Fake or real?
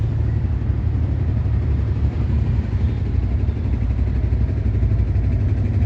real